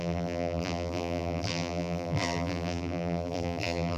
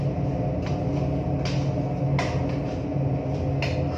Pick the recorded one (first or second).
second